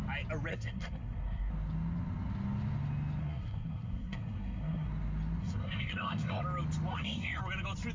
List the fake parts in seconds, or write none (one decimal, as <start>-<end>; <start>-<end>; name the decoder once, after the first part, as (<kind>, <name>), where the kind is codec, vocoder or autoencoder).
0.5-1.5 (codec, SNAC); 3.2-4.9; 5.4-6.4; 6.9-7.4